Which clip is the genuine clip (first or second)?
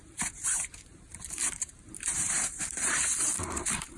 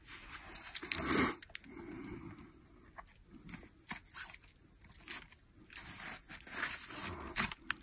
second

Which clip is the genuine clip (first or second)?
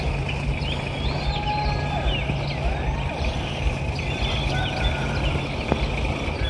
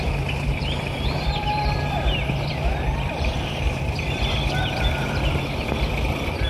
first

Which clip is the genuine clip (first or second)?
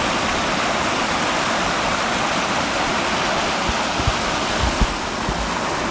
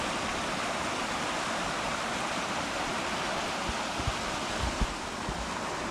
first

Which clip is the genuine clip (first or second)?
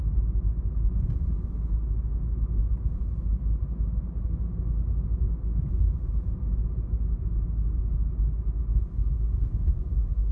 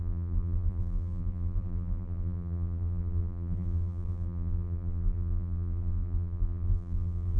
first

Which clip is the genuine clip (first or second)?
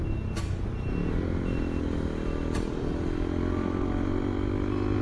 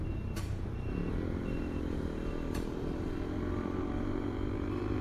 first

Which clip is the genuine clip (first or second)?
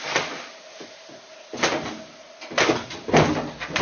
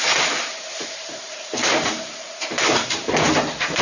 first